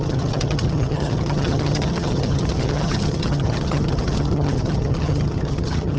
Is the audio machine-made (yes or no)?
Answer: yes